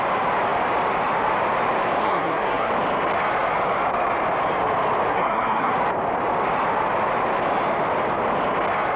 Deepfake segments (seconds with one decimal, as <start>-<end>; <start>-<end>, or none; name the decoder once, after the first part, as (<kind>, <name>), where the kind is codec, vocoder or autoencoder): 2.0-2.7 (codec, SNAC); 5.1-5.7